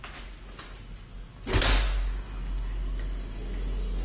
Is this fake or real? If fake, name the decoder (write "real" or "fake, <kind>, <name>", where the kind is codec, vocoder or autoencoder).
real